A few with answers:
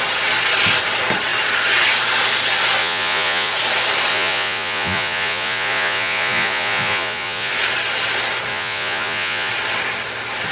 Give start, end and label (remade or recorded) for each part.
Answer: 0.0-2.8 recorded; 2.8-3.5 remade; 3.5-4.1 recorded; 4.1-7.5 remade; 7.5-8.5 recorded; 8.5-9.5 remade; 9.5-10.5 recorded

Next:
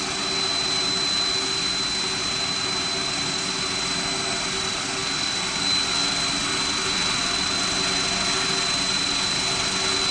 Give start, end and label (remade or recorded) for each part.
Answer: 0.0-10.1 recorded

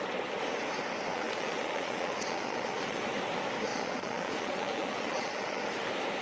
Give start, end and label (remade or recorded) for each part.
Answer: 0.0-1.1 recorded; 1.1-3.0 remade; 3.0-3.7 recorded; 3.7-5.6 remade; 5.6-6.2 recorded

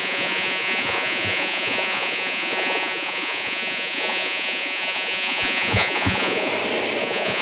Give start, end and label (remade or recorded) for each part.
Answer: 0.0-6.5 remade; 6.5-7.0 recorded; 7.0-7.4 remade